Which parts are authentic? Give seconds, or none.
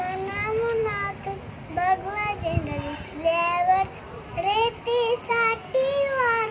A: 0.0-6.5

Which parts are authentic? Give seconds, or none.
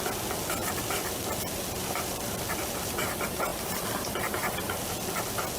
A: 0.0-0.6; 2.3-3.5; 4.9-5.6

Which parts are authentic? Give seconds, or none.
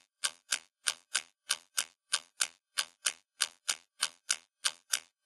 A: none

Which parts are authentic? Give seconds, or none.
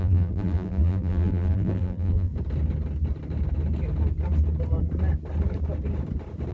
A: 2.3-6.5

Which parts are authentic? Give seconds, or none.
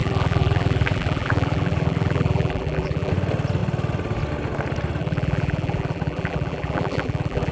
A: 3.1-5.0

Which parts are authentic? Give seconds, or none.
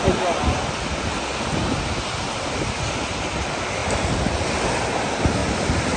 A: 0.0-6.0